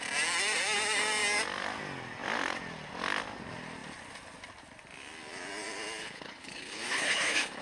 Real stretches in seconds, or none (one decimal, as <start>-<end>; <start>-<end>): 0.0-6.0